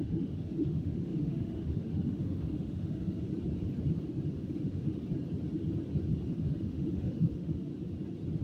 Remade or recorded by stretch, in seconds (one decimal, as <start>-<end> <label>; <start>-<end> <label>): 0.0-3.3 remade; 3.3-4.3 recorded; 4.3-5.0 remade; 5.0-6.3 recorded; 6.3-7.7 remade; 7.7-8.4 recorded